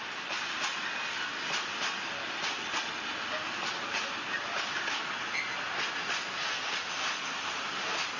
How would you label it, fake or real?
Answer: real